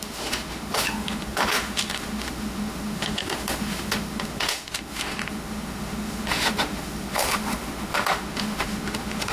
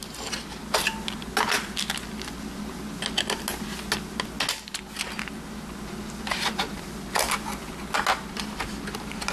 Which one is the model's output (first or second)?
first